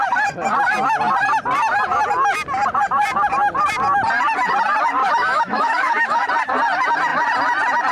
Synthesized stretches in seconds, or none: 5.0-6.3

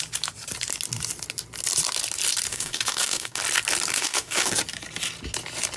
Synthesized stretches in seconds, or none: 2.5-3.4; 3.9-4.6

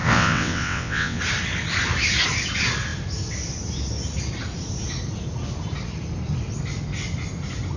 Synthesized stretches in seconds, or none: 0.0-1.2

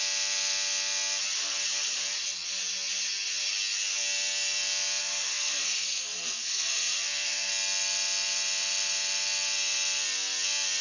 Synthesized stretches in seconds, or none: 5.0-7.5